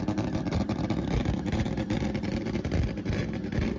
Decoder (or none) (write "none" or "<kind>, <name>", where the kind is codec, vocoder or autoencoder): vocoder, BigVGAN v2